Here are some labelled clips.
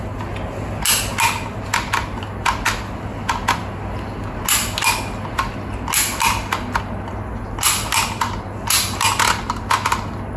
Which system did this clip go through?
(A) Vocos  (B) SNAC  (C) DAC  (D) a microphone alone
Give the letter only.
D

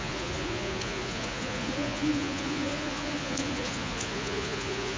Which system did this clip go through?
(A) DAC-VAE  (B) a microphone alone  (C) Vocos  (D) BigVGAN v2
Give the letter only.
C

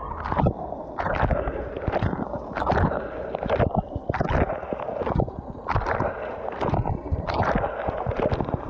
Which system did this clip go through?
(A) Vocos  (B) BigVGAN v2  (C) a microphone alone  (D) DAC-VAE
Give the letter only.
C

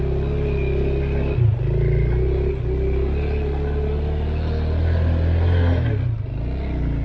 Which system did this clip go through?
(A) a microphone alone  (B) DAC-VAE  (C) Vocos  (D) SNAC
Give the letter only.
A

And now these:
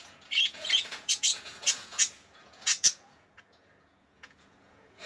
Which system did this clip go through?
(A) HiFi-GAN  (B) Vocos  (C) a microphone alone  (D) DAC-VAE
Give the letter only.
B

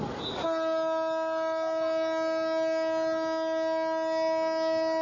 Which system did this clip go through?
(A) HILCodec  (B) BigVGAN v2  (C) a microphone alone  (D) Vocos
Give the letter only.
C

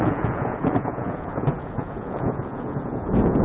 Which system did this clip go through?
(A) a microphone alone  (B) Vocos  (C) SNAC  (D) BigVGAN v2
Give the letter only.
B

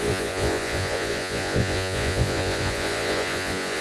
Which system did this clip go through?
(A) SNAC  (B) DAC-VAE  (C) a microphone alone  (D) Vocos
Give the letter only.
D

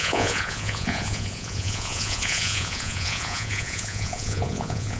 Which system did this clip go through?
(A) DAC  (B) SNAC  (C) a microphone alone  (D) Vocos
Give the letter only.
D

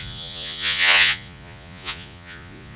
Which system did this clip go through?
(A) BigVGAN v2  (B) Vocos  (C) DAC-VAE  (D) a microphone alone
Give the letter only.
B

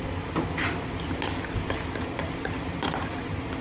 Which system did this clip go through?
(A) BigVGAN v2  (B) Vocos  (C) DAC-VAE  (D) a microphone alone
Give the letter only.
D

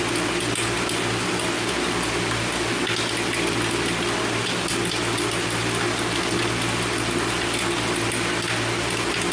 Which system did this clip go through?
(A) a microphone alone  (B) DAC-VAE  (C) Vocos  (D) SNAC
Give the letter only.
A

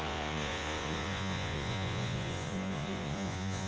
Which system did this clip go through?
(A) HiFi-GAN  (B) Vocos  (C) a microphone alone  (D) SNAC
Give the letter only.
B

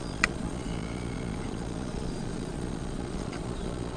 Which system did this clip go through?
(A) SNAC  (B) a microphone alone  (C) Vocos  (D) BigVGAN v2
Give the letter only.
C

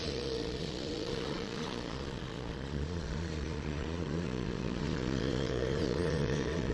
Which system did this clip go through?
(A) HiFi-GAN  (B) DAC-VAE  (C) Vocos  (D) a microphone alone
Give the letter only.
C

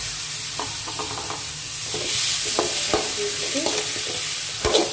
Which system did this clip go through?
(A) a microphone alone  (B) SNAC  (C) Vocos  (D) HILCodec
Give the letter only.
A